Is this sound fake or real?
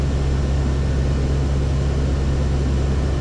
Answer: real